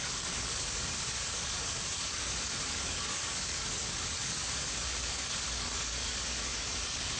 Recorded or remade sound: remade